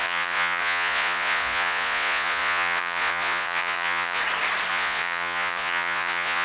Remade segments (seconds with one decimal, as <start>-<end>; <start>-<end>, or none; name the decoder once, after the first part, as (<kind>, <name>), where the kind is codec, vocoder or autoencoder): 0.0-4.2 (vocoder, Vocos); 4.7-6.4